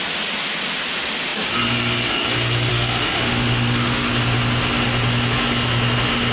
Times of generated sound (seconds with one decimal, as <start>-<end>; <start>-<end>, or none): 2.7-4.1